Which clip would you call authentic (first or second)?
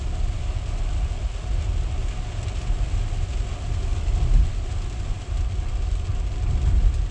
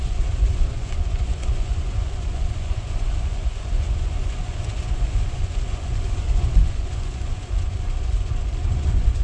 first